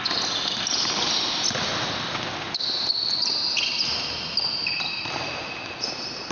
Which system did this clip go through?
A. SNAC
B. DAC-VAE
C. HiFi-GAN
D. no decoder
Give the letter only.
D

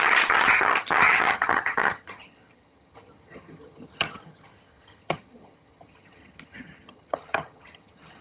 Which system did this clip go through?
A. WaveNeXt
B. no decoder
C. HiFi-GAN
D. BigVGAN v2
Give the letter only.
C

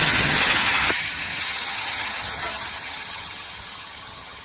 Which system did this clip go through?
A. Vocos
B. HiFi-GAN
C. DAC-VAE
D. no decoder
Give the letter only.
B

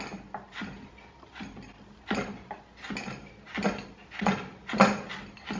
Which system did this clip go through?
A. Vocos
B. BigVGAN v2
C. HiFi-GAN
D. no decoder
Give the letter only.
D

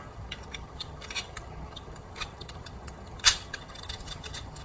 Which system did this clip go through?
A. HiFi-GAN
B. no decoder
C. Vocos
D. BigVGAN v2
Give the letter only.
A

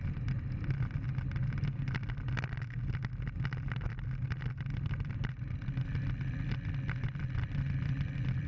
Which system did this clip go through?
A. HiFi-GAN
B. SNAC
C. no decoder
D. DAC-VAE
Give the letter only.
C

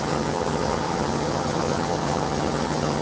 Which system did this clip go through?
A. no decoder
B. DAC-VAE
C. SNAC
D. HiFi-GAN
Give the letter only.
D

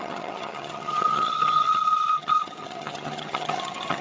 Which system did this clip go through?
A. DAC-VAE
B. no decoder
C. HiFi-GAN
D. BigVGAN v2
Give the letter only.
C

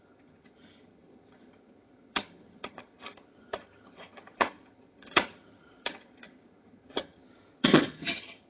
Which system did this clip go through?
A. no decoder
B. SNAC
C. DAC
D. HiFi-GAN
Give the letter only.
D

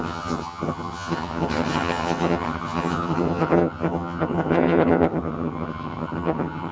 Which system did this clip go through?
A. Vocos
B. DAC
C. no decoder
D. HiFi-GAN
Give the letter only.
D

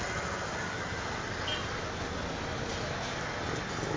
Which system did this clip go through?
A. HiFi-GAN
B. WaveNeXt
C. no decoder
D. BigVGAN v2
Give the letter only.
C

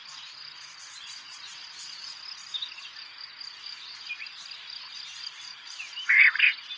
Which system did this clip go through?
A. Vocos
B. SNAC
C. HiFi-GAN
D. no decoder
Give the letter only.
D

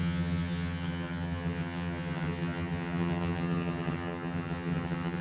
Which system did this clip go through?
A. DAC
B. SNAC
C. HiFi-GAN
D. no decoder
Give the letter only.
C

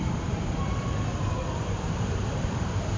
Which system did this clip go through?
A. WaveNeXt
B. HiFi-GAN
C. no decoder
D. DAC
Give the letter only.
C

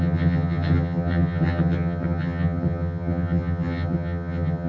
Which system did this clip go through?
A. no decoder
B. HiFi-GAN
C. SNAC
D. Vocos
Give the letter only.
B